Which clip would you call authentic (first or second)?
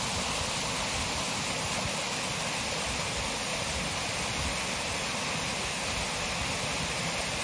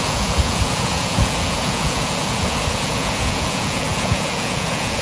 first